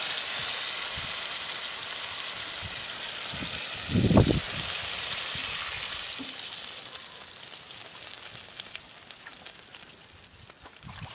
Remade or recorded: recorded